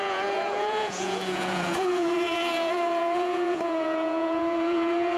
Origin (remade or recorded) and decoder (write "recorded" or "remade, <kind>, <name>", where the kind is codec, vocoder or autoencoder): remade, vocoder, Vocos